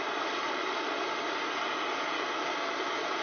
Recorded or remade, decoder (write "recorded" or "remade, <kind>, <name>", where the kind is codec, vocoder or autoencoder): recorded